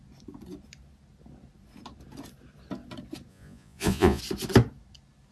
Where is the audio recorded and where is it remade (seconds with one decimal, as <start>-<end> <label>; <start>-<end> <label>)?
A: 0.0-3.3 recorded; 3.3-4.2 remade; 4.2-5.3 recorded

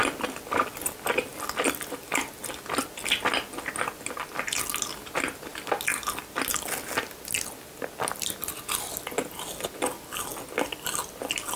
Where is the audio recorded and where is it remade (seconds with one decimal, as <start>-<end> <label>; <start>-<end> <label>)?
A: 0.0-11.6 recorded

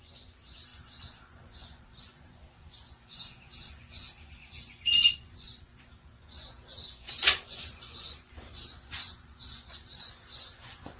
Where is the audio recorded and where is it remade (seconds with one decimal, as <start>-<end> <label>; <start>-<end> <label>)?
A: 0.0-11.0 remade

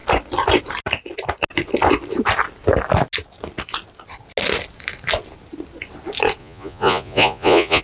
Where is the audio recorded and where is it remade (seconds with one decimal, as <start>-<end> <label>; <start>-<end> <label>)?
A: 0.0-6.4 recorded; 6.4-7.8 remade

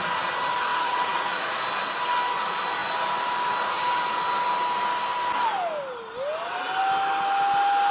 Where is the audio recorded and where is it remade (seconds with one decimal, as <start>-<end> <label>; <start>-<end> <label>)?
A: 0.0-0.7 recorded; 0.7-1.6 remade; 1.6-7.9 recorded